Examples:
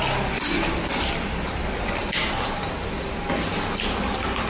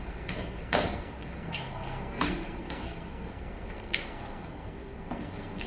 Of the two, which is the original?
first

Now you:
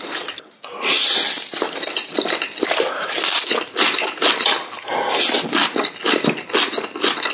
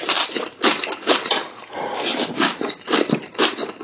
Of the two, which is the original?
first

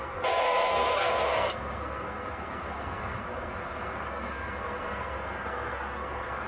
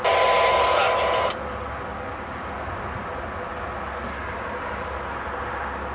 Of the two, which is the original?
second